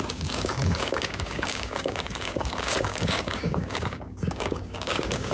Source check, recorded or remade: remade